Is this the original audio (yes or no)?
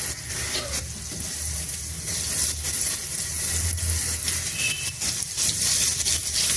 yes